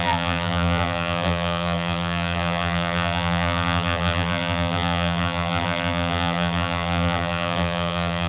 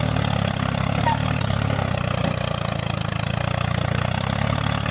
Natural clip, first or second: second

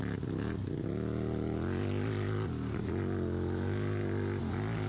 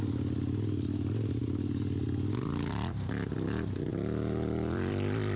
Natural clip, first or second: first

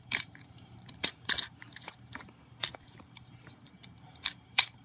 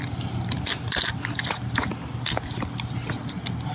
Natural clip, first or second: second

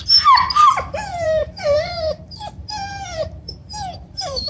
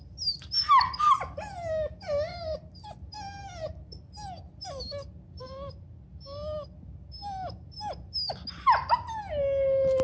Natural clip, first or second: second